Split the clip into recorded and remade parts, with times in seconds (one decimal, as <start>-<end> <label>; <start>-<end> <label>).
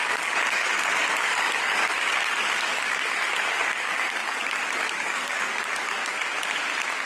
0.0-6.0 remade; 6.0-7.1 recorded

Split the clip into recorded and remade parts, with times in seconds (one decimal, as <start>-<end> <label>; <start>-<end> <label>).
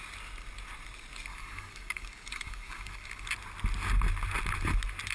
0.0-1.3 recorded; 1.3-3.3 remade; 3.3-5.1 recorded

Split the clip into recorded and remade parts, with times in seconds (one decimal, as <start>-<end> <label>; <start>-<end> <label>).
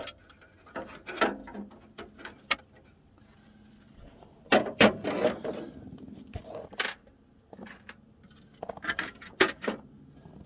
0.0-10.5 recorded